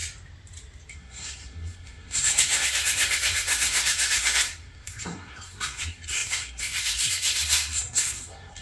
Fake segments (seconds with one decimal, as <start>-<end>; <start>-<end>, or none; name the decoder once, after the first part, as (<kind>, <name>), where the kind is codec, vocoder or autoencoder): 0.9-8.6 (codec, SNAC)